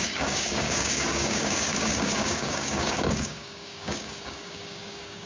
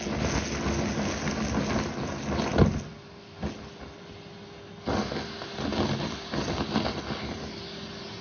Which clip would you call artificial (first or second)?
first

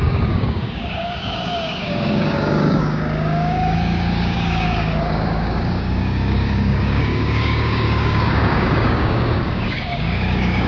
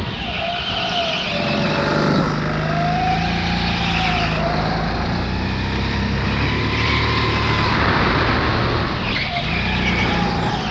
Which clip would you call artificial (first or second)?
first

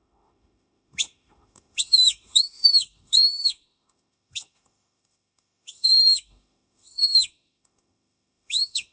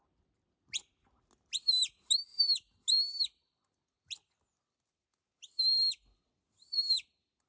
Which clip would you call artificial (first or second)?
first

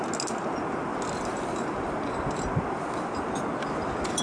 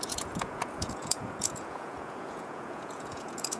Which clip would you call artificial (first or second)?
second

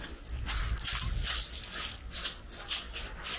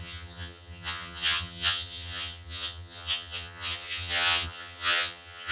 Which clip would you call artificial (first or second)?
second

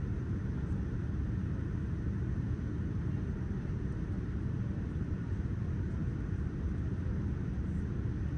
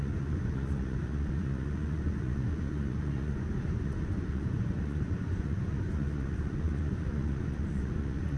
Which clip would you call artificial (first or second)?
second